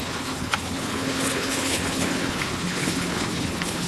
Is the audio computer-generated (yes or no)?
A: yes